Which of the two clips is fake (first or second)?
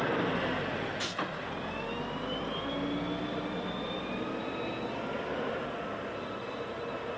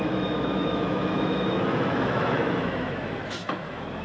second